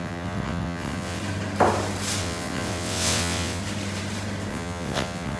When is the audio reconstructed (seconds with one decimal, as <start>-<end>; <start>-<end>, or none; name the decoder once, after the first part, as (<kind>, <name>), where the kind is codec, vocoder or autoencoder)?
0.0-1.2 (vocoder, WaveNeXt); 2.2-3.6; 4.5-5.4